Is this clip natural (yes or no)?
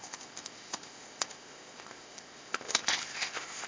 no